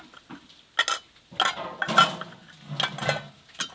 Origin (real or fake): real